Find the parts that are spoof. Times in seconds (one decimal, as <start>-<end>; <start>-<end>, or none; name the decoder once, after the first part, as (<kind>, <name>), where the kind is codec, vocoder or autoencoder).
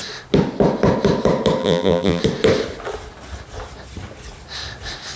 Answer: 1.6-2.2 (vocoder, BigVGAN v2)